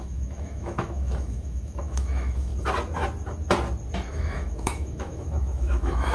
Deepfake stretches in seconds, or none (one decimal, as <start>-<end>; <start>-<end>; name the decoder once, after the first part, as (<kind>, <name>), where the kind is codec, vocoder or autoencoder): 0.0-2.5 (autoencoder, DAC-VAE); 4.1-6.1